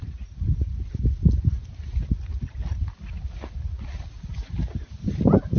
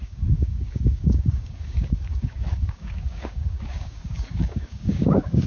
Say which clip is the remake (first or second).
second